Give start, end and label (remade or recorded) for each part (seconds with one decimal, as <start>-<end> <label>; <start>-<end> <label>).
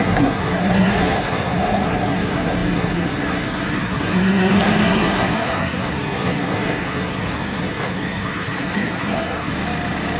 0.0-9.5 remade; 9.5-10.2 recorded